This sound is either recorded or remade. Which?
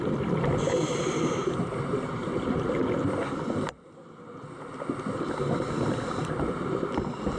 recorded